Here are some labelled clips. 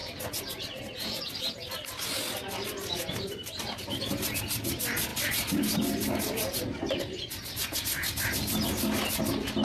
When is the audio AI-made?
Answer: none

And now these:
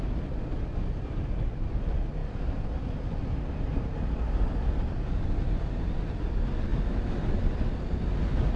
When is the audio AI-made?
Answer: none